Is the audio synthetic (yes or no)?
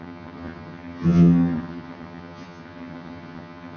yes